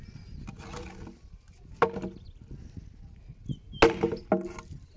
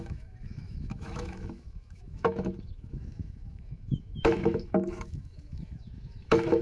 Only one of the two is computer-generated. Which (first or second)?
second